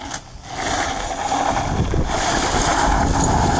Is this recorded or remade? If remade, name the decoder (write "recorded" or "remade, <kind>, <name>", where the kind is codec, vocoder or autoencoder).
recorded